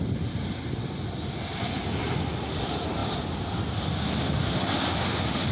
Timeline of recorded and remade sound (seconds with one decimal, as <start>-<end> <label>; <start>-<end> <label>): 0.0-5.5 recorded